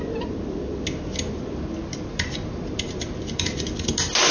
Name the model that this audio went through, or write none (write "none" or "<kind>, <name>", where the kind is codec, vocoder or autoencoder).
none